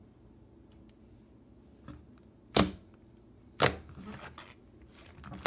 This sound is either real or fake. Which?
real